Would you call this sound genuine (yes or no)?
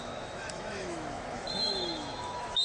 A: no